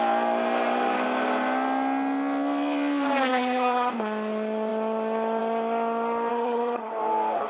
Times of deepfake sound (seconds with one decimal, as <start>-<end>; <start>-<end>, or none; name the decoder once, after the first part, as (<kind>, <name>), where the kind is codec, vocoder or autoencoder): 3.3-3.9 (vocoder, HiFi-GAN); 6.3-6.9